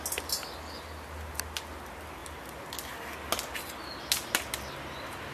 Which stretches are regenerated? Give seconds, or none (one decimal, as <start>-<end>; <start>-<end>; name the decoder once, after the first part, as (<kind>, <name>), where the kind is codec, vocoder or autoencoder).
none

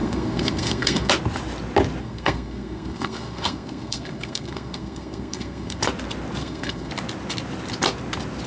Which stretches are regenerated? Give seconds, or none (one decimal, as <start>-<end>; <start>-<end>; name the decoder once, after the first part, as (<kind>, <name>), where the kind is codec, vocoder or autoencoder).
0.0-1.1 (codec, SNAC); 2.0-5.8; 6.4-6.9

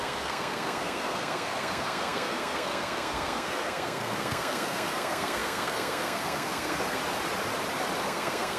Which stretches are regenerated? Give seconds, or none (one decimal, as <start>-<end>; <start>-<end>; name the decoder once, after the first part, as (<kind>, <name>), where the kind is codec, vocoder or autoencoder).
0.0-7.0 (codec, SNAC); 8.0-8.6

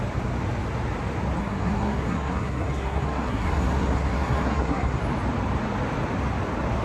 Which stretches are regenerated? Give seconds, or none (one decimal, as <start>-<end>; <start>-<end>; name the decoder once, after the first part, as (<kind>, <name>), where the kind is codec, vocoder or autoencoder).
1.4-5.0 (codec, SNAC)